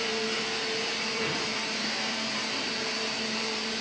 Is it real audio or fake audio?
fake